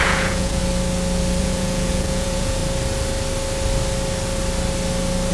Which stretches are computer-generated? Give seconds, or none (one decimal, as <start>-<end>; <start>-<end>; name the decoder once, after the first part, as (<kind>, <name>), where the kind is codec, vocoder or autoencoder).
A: 0.0-0.6 (vocoder, Vocos); 1.4-2.6